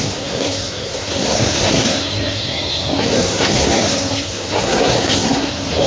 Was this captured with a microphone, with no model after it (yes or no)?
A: no